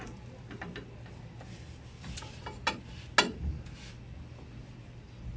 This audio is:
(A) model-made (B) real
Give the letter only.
B